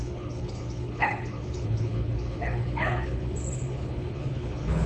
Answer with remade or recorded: remade